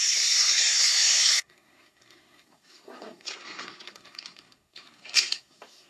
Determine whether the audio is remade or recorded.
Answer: remade